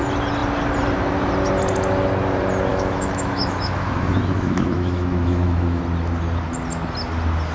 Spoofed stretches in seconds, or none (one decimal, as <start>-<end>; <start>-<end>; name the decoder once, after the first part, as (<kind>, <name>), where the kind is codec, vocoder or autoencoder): 2.7-5.8 (autoencoder, DAC-VAE)

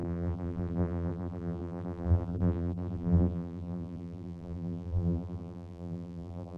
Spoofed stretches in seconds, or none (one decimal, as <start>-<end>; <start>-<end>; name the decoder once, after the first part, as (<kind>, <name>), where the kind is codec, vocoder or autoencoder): 0.0-6.6 (vocoder, BigVGAN v2)

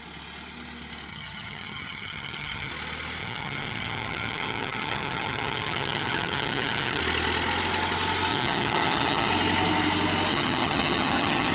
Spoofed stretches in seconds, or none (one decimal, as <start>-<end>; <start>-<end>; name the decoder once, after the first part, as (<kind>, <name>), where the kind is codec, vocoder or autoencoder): 1.1-2.7 (vocoder, HiFi-GAN); 3.2-7.0; 8.3-9.3; 10.3-11.5

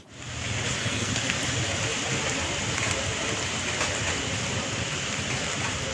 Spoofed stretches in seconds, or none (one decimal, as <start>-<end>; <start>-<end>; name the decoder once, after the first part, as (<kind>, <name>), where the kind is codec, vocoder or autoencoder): 0.8-1.4 (codec, SNAC)

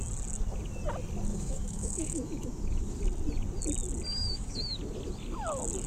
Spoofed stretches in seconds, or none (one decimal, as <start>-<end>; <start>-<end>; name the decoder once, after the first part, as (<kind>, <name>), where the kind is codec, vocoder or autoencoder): 1.3-3.0 (autoencoder, DAC-VAE); 4.1-4.8

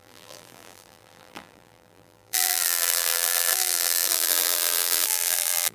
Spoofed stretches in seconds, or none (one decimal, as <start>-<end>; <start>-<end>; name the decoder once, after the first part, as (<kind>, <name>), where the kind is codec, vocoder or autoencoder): 0.0-5.7 (vocoder, BigVGAN v2)